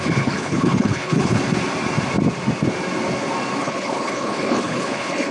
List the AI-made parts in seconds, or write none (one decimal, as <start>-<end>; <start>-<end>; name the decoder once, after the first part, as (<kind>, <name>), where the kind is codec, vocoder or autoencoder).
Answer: 0.0-1.4 (codec, HILCodec); 3.6-5.3